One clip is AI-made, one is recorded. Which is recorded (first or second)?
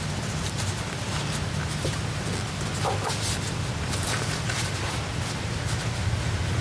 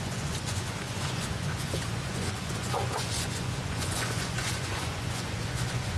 first